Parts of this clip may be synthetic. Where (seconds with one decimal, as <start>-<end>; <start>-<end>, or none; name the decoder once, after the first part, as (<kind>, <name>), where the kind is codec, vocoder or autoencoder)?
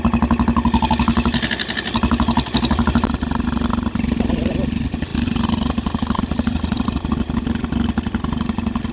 none